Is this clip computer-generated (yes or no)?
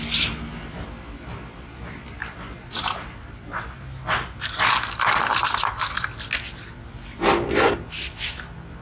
no